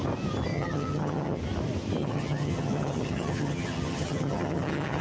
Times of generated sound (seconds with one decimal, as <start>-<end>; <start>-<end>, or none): 0.5-1.4; 2.0-5.0